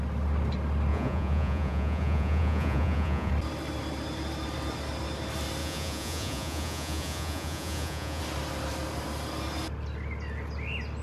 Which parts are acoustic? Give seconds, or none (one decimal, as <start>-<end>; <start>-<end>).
0.0-0.9; 3.3-5.6; 8.2-11.0